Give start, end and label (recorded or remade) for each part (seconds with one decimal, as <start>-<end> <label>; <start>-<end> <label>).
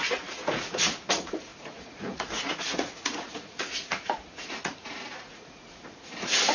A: 0.0-6.5 remade